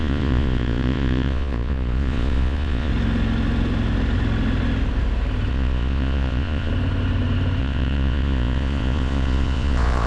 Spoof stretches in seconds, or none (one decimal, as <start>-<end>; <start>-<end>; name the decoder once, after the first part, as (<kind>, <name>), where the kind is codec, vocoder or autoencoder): 0.0-2.9 (vocoder, Vocos); 5.5-6.7; 7.6-10.1